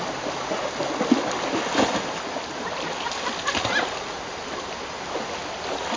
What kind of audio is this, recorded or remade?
recorded